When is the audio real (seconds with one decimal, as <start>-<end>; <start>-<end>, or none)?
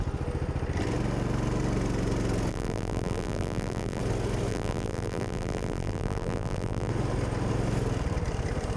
0.0-2.5; 4.0-4.5; 6.9-8.8